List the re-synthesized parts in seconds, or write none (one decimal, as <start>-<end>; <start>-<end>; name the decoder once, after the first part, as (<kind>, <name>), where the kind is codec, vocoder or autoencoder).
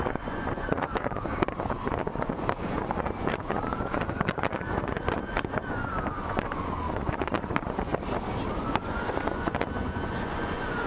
0.0-7.9 (vocoder, Vocos); 8.6-10.9